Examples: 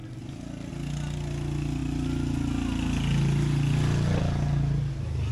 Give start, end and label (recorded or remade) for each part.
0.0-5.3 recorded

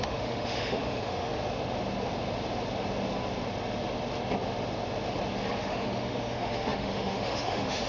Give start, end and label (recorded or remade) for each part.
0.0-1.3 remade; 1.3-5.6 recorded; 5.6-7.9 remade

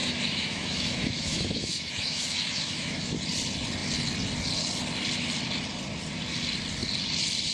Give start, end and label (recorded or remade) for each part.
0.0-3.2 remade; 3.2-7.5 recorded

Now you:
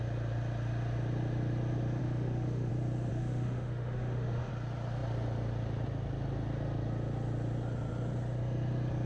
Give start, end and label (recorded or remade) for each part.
0.0-2.0 recorded; 2.0-2.7 remade; 2.7-3.1 recorded; 3.1-4.5 remade; 4.5-9.1 recorded

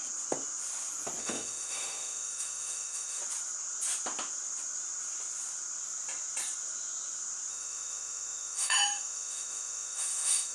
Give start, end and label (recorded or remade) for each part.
0.0-1.2 recorded; 1.2-3.2 remade; 3.2-7.5 recorded; 7.5-10.5 remade

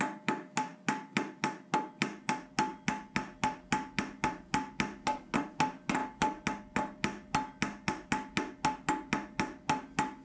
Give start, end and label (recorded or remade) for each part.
0.0-10.2 recorded